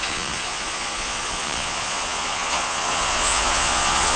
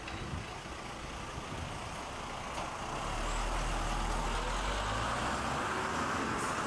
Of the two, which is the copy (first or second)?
first